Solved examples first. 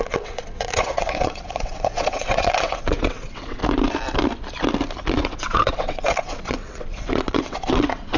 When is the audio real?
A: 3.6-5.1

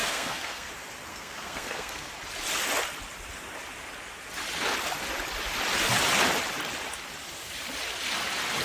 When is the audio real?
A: 0.7-1.1; 2.1-8.6